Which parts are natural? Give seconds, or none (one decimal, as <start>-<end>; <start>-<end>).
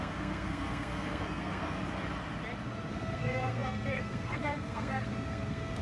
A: 1.8-2.9